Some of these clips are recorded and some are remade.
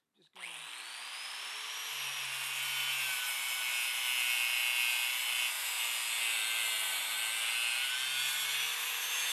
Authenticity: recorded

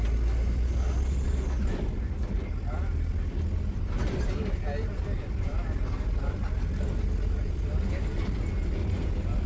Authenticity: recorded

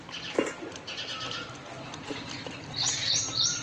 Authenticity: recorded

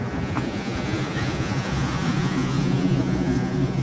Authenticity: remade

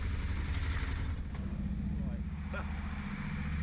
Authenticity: recorded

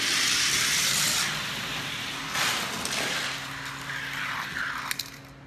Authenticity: recorded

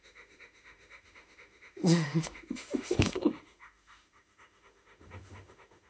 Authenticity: remade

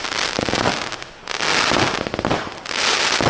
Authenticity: recorded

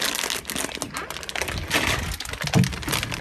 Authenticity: recorded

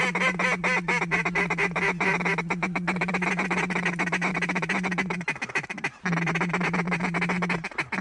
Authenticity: recorded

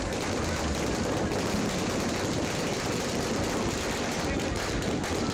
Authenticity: recorded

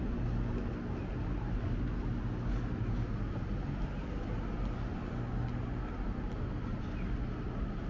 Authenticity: recorded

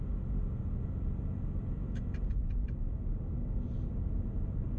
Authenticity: recorded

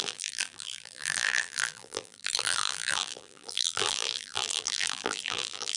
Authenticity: remade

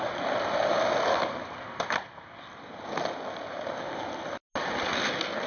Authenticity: recorded